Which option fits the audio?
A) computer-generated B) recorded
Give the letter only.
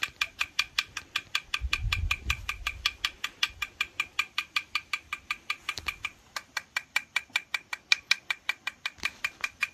A